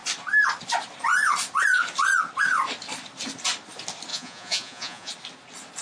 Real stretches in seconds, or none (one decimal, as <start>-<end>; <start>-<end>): 0.0-4.1; 5.1-5.8

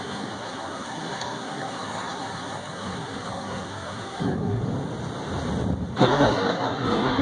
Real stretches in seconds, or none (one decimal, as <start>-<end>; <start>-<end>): 4.6-6.0

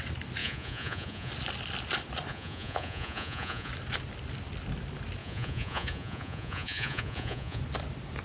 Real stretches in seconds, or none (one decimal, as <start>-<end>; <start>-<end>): 0.0-0.4; 1.3-2.3; 3.7-5.2; 7.6-8.2

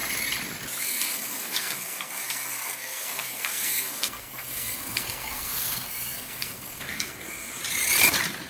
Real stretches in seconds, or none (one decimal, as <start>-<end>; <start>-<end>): 0.0-0.8; 7.6-8.5

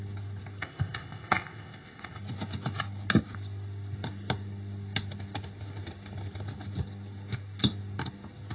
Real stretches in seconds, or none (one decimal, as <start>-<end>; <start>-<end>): 0.0-0.6; 2.2-8.5